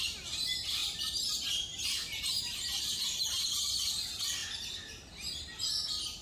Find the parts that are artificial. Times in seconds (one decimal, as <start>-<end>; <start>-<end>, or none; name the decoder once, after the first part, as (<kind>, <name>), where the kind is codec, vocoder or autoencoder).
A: 0.8-3.8 (vocoder, BigVGAN v2); 4.4-5.4